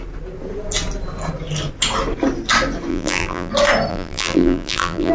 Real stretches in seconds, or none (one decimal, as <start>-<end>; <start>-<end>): 0.0-2.9; 3.5-3.9